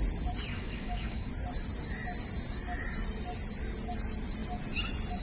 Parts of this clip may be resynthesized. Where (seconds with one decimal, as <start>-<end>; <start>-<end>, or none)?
0.5-1.3